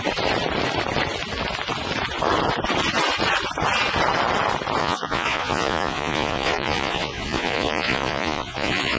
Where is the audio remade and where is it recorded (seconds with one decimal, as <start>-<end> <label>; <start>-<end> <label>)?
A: 0.0-4.8 recorded; 4.8-9.0 remade